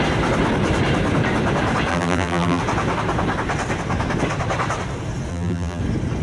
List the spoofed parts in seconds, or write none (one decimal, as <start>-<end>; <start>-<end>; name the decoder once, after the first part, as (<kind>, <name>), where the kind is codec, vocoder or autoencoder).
1.9-2.6 (vocoder, BigVGAN v2); 5.3-5.8